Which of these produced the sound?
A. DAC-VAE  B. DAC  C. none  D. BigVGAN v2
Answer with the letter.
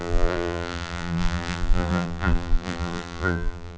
D